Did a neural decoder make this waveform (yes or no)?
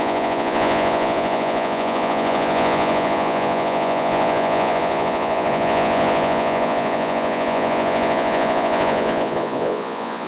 yes